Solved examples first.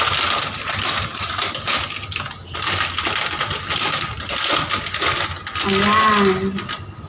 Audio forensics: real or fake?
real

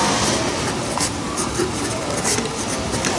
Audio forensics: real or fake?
real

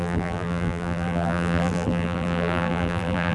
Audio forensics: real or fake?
fake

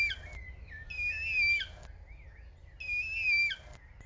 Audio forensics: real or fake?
real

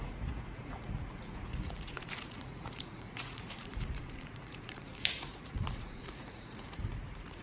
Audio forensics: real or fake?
fake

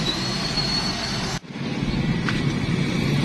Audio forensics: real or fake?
real